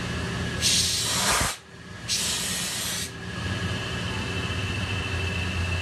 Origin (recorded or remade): recorded